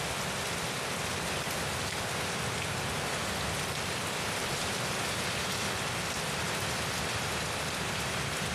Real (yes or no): yes